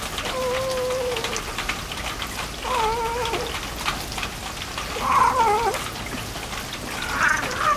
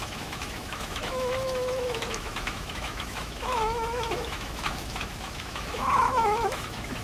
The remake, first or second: second